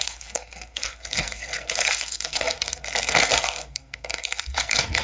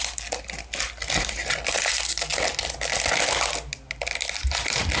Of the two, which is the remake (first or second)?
first